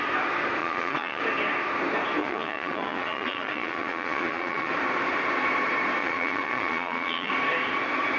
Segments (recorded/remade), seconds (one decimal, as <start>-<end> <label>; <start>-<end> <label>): 0.0-0.6 recorded; 0.6-1.2 remade; 1.2-2.2 recorded; 2.2-4.7 remade; 4.7-6.0 recorded; 6.0-7.3 remade; 7.3-8.2 recorded